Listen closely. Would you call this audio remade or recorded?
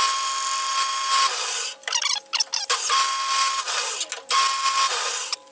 recorded